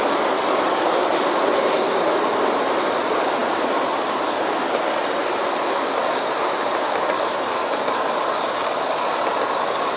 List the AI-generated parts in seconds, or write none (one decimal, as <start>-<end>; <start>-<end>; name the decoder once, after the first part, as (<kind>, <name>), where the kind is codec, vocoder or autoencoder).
none